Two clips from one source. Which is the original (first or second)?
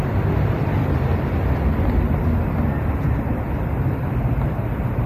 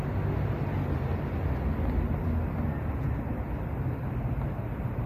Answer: second